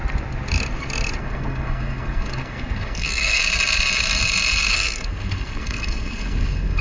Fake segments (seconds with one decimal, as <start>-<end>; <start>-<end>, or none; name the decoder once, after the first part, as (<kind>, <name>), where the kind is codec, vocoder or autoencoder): 1.2-3.4 (codec, SNAC); 4.7-6.8